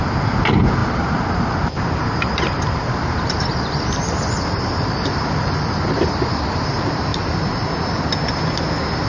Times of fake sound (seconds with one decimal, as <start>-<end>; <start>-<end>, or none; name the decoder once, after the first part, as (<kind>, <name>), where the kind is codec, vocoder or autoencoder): 0.8-6.0 (vocoder, BigVGAN v2); 7.1-7.7